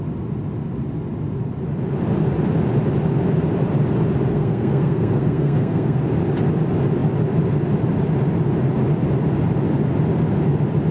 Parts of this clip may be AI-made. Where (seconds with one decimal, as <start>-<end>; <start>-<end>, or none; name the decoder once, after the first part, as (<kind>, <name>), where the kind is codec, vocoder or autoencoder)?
4.3-6.0 (codec, SNAC)